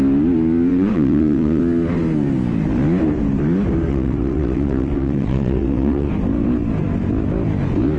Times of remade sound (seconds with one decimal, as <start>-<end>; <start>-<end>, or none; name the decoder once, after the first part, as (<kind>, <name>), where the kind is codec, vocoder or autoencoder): 0.7-1.6 (vocoder, WaveNeXt); 3.9-6.1